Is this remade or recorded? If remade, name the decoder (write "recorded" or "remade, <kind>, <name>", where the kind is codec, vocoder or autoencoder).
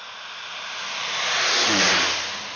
recorded